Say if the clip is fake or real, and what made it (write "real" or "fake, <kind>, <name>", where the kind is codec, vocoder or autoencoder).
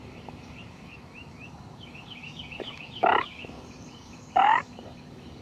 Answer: fake, codec, DAC